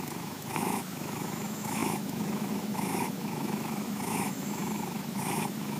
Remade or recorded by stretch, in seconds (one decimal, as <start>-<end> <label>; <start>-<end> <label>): 0.0-5.8 remade